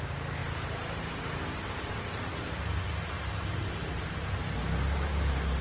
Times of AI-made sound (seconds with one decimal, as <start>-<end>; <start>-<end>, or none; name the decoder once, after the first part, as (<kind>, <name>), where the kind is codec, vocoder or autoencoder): none